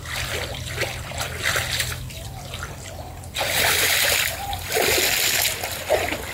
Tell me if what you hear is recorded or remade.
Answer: remade